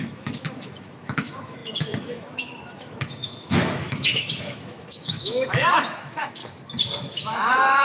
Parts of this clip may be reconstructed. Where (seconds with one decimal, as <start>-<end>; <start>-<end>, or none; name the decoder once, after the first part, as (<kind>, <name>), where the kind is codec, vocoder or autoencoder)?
0.0-6.4 (autoencoder, DAC-VAE); 7.0-7.8